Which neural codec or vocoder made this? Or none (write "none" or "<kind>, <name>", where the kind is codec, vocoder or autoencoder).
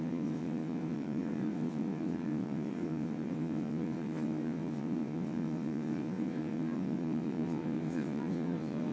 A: vocoder, WaveNeXt